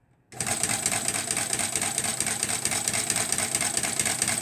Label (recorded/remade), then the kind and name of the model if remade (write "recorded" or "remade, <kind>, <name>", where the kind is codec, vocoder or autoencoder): recorded